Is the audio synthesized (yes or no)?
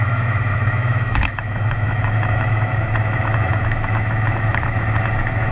yes